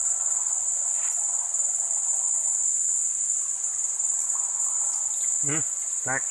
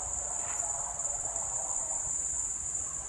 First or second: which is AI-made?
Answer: second